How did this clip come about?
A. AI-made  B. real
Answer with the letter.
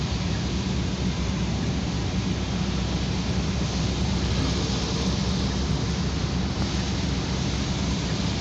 B